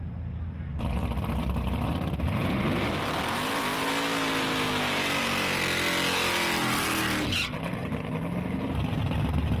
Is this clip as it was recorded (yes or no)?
yes